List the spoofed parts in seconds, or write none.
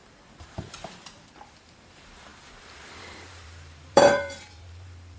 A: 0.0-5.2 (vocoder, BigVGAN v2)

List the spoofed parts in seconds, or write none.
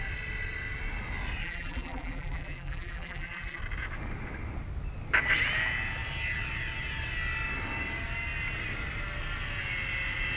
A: 1.4-3.6 (vocoder, BigVGAN v2)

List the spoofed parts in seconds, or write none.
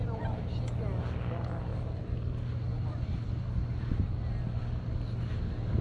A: none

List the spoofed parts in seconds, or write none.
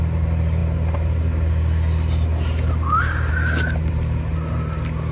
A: none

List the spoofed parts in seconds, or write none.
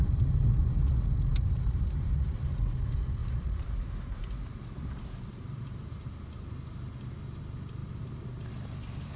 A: 1.3-2.4 (vocoder, BigVGAN v2); 3.2-6.1; 7.8-8.5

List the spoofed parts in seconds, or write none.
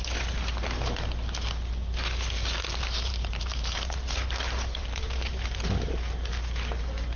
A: 2.4-5.9 (vocoder, BigVGAN v2)